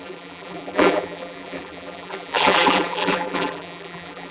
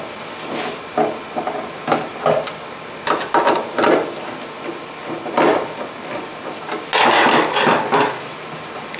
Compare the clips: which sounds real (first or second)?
second